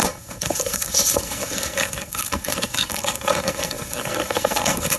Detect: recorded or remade remade